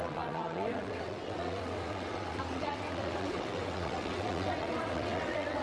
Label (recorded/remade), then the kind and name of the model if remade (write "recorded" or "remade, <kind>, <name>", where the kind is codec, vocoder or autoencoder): remade, vocoder, WaveNeXt